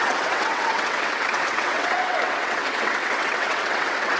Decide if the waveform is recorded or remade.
remade